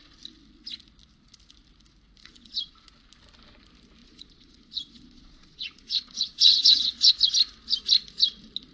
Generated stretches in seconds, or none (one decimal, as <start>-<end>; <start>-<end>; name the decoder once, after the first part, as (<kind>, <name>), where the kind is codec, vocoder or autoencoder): 2.2-2.7 (vocoder, Vocos); 4.0-7.1